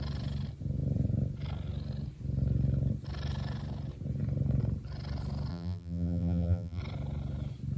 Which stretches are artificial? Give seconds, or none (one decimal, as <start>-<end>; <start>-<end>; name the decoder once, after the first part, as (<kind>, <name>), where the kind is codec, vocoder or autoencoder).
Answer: 5.5-6.8 (vocoder, BigVGAN v2)